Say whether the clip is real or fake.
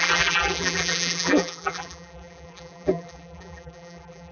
fake